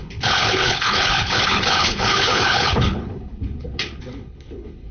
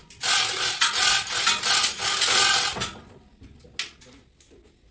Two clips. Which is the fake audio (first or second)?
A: first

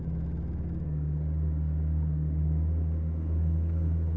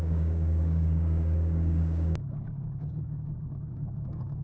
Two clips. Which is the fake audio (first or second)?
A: second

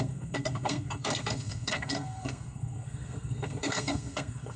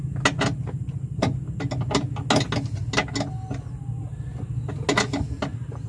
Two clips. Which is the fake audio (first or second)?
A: first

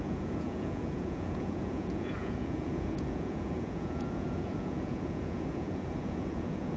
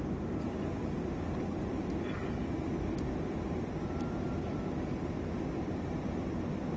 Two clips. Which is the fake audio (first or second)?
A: first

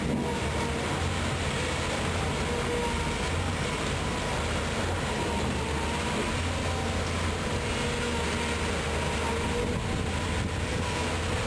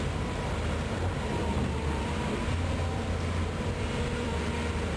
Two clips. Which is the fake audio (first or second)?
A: second